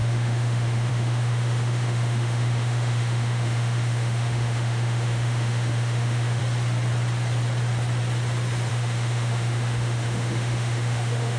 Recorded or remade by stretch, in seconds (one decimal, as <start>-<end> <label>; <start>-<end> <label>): 0.0-6.4 remade; 6.4-8.7 recorded; 8.7-11.4 remade